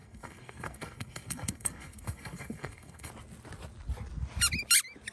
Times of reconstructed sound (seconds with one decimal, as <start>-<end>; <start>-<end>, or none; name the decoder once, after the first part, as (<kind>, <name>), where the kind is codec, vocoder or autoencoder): 0.0-3.1 (codec, SNAC)

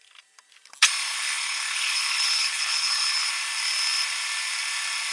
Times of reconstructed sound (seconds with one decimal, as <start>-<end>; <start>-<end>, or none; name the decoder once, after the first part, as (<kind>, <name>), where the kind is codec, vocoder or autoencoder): 1.1-3.3 (codec, HILCodec)